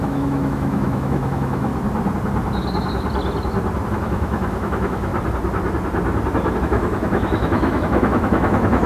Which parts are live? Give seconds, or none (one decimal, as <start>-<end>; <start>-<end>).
1.7-3.9; 5.1-6.6